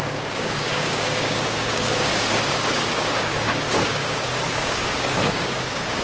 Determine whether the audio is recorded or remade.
remade